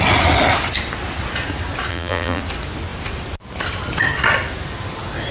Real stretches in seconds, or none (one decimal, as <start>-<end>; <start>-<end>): 0.0-1.9; 2.4-5.3